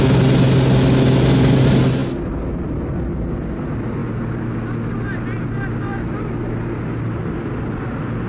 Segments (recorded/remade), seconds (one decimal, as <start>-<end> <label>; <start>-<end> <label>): 0.0-8.3 recorded